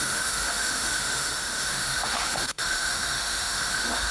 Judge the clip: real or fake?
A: fake